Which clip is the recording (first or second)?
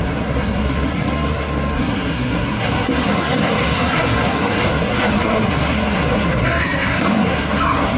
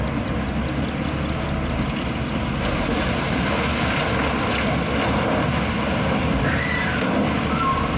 second